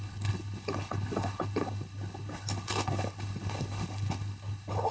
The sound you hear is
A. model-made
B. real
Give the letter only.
A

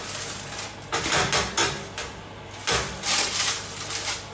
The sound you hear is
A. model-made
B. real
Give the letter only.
B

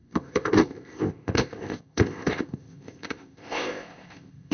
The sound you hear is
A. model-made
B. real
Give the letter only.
A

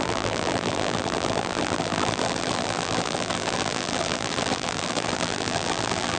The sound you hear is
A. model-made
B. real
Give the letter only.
A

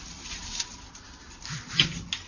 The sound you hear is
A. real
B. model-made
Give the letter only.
A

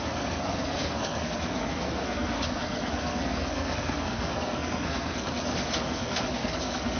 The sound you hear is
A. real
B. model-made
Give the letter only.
B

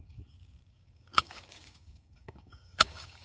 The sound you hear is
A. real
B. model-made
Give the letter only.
B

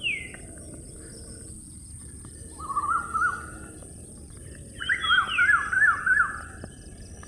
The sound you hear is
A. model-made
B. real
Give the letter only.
B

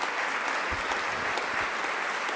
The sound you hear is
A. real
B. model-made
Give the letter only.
A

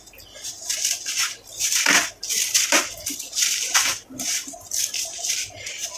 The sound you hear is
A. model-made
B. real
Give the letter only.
B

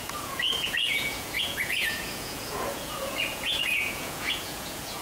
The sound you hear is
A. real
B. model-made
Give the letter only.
B